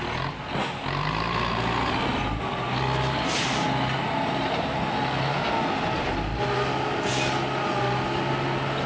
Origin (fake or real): real